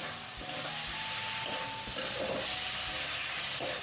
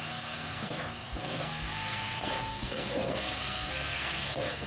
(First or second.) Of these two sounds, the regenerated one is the second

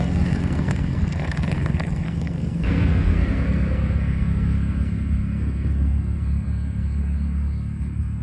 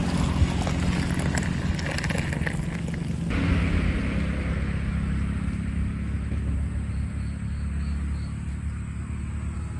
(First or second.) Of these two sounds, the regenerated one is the first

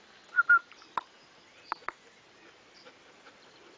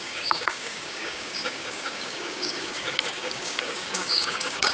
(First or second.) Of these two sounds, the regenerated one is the second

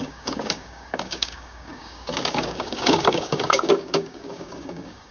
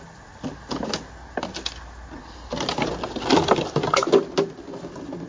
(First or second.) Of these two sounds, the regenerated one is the first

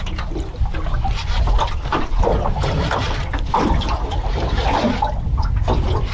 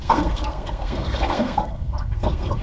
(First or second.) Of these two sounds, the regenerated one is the second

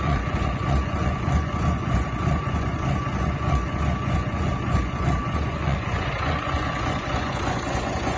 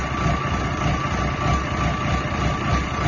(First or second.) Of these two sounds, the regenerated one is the first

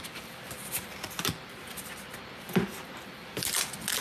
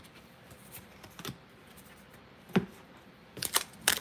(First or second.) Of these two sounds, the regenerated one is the second